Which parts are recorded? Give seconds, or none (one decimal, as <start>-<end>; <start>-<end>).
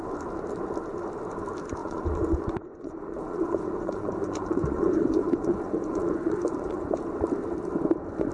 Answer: 0.0-1.8; 6.8-8.3